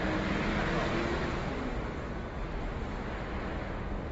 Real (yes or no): yes